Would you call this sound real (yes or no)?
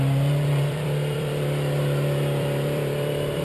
no